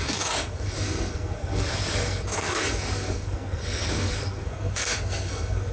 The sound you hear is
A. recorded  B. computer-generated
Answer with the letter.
B